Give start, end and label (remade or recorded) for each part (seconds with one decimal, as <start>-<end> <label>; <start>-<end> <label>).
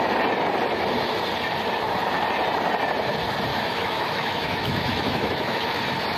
0.0-3.5 recorded; 3.5-5.8 remade; 5.8-6.2 recorded